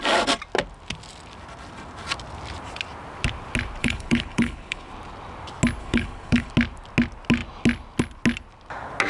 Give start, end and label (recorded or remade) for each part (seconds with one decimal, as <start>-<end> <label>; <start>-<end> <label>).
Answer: 0.0-3.8 recorded; 3.8-4.9 remade; 4.9-5.8 recorded; 5.8-6.5 remade; 6.5-9.1 recorded